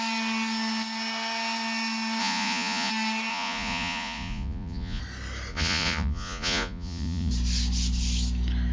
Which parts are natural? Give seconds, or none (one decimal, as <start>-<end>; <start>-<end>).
0.0-2.2; 2.9-3.3; 5.0-5.5; 7.3-8.7